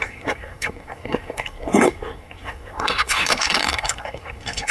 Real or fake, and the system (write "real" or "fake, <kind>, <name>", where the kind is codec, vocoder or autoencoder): fake, codec, SNAC